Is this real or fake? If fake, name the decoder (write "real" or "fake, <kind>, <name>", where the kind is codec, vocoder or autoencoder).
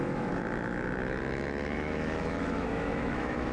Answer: fake, autoencoder, DAC-VAE